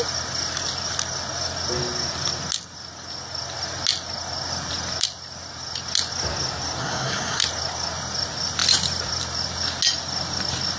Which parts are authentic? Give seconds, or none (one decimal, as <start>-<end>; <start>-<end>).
0.0-6.8; 7.4-10.8